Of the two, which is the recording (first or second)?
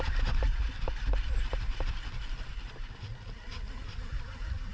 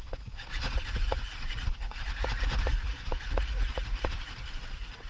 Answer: first